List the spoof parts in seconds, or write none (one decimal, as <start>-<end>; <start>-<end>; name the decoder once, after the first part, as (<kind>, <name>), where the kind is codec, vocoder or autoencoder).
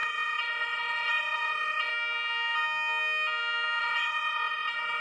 0.0-1.9 (vocoder, WaveNeXt); 3.8-5.0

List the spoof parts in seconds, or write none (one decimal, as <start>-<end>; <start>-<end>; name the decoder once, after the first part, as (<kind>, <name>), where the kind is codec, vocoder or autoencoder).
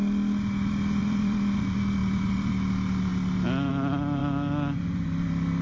1.0-1.6 (vocoder, BigVGAN v2); 2.0-2.5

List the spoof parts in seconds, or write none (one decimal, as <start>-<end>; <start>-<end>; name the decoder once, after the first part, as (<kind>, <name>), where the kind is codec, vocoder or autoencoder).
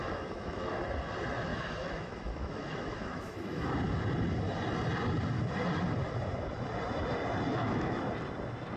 0.0-0.8 (autoencoder, DAC-VAE); 1.5-3.7; 7.5-8.0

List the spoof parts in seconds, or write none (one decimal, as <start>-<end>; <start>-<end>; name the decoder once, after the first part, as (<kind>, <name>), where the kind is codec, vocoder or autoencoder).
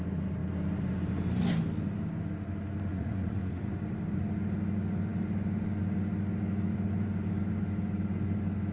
2.9-3.7 (vocoder, Vocos)